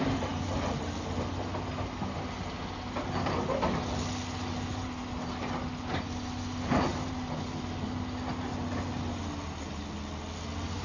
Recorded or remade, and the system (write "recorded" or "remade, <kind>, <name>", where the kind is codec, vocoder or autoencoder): recorded